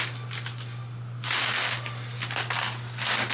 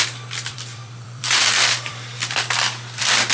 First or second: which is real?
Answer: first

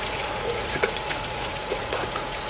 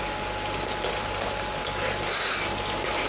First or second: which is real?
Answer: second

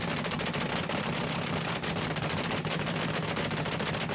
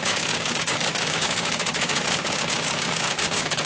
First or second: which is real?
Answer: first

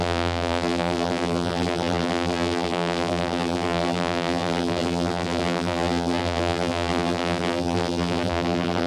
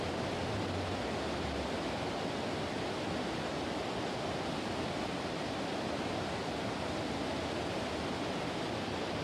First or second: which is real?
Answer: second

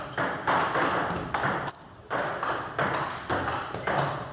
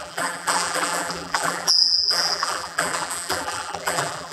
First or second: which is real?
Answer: first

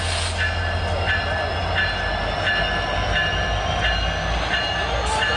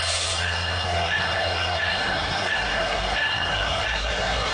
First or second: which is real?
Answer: first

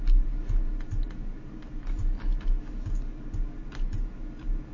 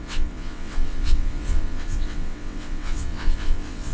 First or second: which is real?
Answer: first